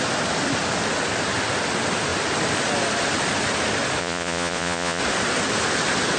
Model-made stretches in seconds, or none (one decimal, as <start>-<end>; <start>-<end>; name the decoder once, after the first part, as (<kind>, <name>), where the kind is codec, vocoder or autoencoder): 4.0-5.0 (vocoder, Vocos)